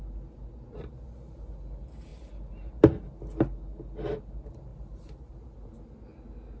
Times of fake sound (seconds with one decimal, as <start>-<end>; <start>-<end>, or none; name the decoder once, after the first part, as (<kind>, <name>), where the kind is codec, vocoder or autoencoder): 4.7-5.3 (vocoder, BigVGAN v2)

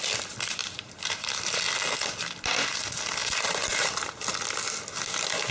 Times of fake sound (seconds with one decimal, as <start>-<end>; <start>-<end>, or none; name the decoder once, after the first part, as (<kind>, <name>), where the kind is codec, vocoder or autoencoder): 0.6-1.6 (vocoder, BigVGAN v2); 3.2-3.9

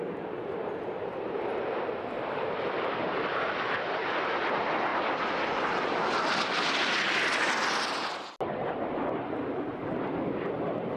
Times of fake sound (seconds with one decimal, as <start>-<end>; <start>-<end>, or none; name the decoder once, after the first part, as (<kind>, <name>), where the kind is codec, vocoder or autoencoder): none

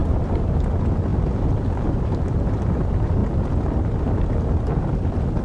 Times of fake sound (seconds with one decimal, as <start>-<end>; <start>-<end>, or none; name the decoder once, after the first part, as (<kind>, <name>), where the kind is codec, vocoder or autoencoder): 0.0-0.6 (vocoder, BigVGAN v2)

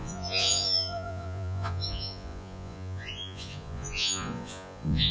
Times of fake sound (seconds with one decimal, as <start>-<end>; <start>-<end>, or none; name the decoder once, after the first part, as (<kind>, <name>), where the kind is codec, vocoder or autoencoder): 0.0-5.1 (vocoder, Vocos)

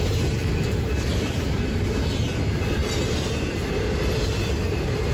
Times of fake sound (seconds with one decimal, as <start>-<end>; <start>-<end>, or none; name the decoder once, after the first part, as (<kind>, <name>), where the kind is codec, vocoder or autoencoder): 0.4-1.8 (vocoder, BigVGAN v2)